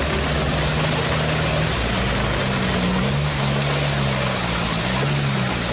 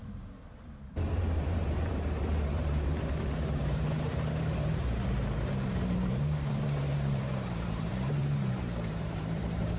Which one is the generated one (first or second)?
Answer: second